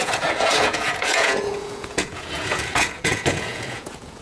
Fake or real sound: fake